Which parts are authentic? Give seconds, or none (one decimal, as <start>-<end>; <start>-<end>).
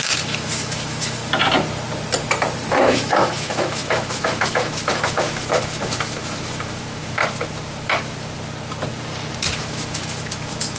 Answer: 1.2-2.7; 7.2-9.6